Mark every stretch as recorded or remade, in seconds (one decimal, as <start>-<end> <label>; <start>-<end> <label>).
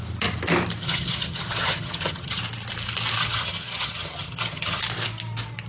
0.0-0.8 recorded; 0.8-2.4 remade; 2.4-3.2 recorded; 3.2-4.8 remade; 4.8-5.7 recorded